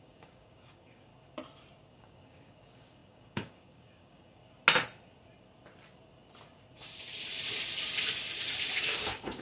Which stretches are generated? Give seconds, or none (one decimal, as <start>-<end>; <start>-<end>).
0.0-1.1; 1.9-4.4; 8.8-9.4